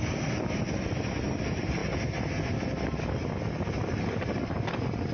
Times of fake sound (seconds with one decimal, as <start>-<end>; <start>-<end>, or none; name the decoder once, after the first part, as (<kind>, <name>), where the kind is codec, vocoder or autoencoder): 0.0-5.1 (vocoder, BigVGAN v2)